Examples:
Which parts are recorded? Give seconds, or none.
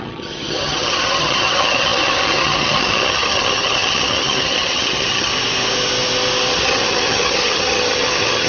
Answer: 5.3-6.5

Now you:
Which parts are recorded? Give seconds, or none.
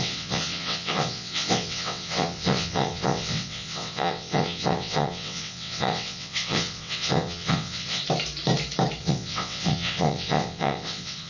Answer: 8.0-9.0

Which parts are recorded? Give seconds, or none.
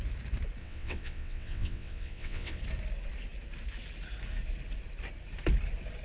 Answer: 0.0-0.6; 2.6-6.0